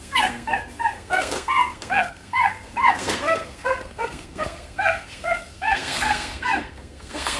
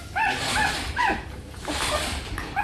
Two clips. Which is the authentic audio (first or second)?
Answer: second